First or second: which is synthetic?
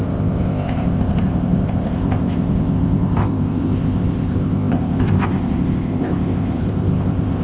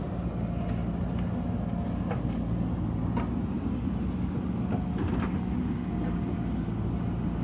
first